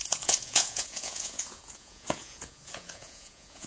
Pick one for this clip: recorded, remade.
remade